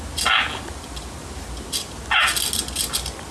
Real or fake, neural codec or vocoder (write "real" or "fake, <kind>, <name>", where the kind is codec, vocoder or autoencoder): real